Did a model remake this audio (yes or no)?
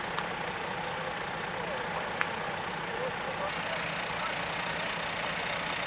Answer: no